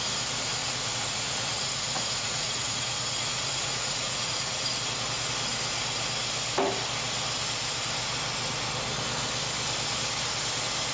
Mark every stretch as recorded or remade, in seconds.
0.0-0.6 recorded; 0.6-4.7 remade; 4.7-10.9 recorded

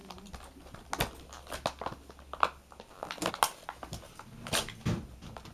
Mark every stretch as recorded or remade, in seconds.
0.0-5.5 recorded

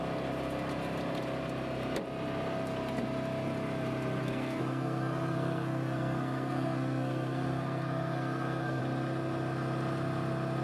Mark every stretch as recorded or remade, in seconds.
0.0-4.2 recorded; 4.2-8.8 remade; 8.8-10.6 recorded

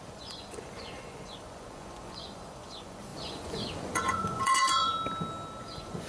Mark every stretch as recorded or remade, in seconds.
0.0-4.9 remade; 4.9-5.6 recorded; 5.6-6.1 remade

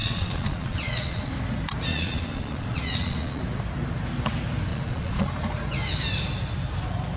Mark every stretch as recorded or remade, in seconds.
0.0-1.3 remade; 1.3-1.9 recorded; 1.9-3.4 remade; 3.4-4.7 recorded; 4.7-5.3 remade; 5.3-7.2 recorded

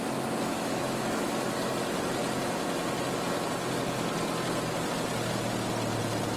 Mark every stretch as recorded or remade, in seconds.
0.0-0.5 recorded; 0.5-1.3 remade; 1.3-6.4 recorded